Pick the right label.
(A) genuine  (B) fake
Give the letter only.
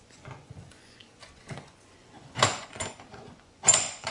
B